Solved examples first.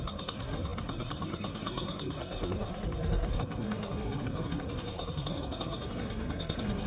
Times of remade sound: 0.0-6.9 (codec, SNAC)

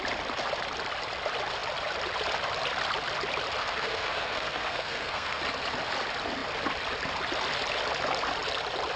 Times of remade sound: 3.6-5.4 (codec, SNAC)

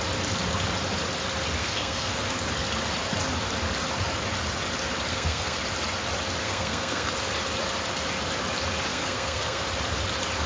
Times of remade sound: 1.6-2.1 (codec, SNAC); 5.1-5.6; 6.4-7.1; 8.9-9.6